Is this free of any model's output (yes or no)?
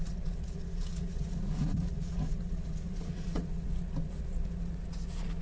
no